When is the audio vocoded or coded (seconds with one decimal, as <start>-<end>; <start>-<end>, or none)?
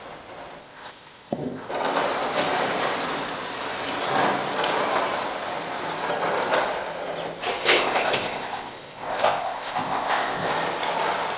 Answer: 0.6-1.7; 7.6-10.5